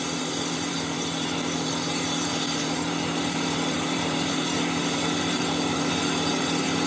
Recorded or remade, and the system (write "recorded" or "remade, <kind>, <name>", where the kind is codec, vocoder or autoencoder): remade, vocoder, BigVGAN v2